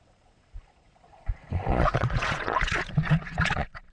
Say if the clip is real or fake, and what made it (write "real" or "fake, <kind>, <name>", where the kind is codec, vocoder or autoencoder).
fake, vocoder, Vocos